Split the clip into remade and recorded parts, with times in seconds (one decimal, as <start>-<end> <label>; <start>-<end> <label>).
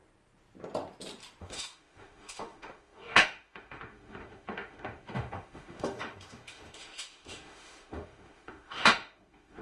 0.0-1.4 recorded; 1.4-9.6 remade